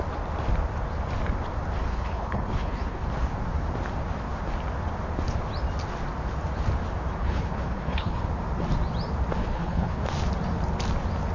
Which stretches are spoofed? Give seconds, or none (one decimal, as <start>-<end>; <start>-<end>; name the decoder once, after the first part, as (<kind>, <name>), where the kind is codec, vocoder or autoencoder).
1.9-3.0 (codec, HILCodec); 7.2-8.2; 9.4-10.0